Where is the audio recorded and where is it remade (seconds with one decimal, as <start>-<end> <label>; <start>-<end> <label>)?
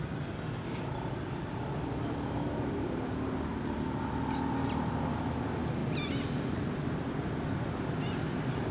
0.0-8.7 recorded